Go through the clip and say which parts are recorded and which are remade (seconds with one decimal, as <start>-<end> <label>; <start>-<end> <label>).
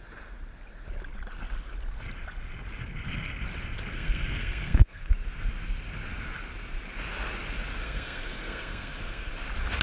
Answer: 0.0-3.9 recorded; 3.9-5.1 remade; 5.1-7.8 recorded; 7.8-9.3 remade; 9.3-9.8 recorded